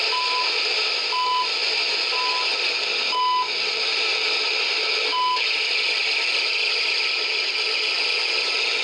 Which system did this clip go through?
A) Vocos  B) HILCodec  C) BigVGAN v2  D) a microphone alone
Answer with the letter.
D